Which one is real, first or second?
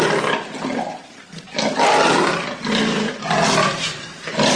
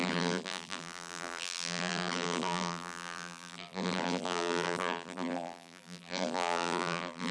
first